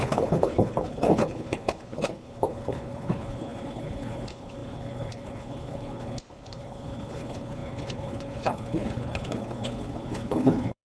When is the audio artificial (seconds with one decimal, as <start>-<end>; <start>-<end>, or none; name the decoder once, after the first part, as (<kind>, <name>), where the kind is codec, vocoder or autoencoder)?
0.0-10.8 (codec, HILCodec)